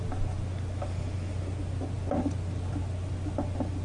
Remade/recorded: recorded